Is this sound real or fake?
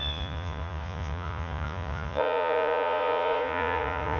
fake